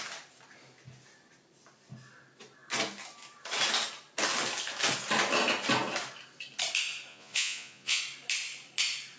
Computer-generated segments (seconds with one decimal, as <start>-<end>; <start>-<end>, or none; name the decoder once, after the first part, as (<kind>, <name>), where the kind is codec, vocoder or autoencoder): 7.1-8.0 (vocoder, Vocos)